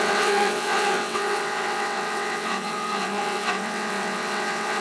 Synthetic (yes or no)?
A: yes